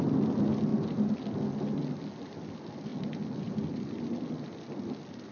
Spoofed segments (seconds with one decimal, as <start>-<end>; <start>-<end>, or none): none